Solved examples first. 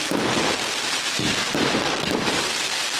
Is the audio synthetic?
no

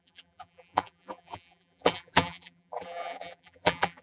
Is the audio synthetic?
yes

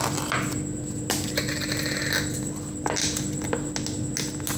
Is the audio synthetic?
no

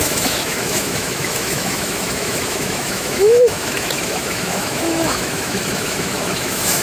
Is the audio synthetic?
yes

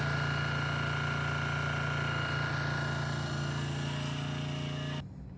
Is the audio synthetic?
no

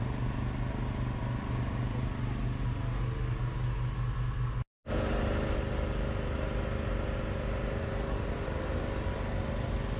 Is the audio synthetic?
no